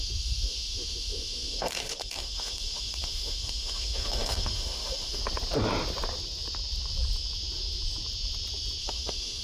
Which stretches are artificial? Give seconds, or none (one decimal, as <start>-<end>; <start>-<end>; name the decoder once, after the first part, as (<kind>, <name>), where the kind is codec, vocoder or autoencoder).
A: 0.0-5.2 (autoencoder, DAC-VAE); 8.8-9.4

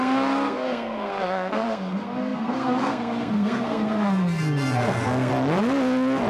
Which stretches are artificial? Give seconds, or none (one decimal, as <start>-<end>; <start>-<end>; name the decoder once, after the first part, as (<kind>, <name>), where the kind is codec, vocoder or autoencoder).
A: 0.0-5.3 (codec, SNAC)